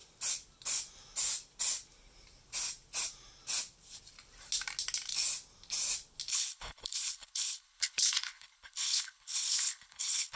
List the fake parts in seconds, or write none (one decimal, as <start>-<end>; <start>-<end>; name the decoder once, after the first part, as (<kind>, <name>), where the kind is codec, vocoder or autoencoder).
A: 6.3-10.4 (codec, HILCodec)